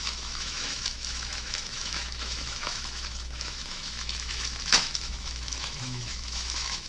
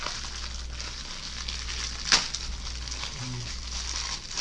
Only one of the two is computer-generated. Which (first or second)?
first